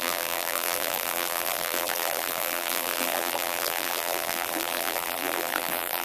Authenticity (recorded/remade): remade